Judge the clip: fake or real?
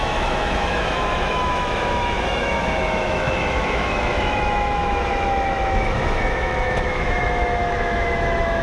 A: fake